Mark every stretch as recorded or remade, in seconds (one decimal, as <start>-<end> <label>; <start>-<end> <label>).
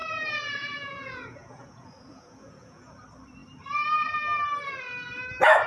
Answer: 0.0-2.9 remade; 2.9-5.7 recorded